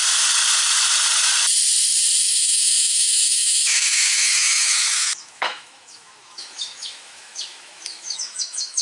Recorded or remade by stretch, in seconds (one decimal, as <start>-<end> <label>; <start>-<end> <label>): 0.0-2.2 recorded; 2.2-8.8 remade